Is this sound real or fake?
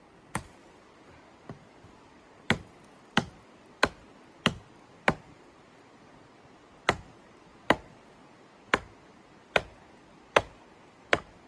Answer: real